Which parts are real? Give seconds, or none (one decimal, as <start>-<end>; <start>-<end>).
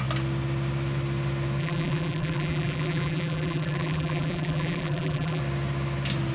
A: 0.0-1.6; 5.4-6.3